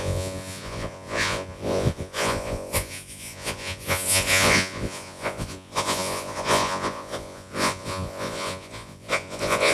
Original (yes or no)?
no